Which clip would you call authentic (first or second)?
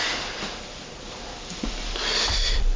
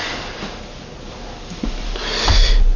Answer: second